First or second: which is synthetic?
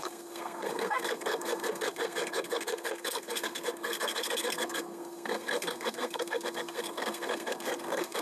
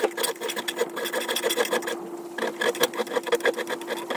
first